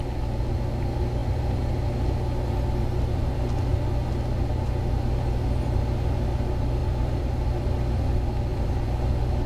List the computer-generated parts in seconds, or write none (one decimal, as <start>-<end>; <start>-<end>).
6.8-8.0; 8.5-9.1